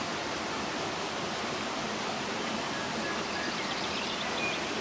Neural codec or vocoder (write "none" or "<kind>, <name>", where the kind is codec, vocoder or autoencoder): none